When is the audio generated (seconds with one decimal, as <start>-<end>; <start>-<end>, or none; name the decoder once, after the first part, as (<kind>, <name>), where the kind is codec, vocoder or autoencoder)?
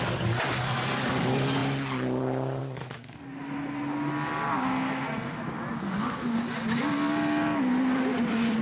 none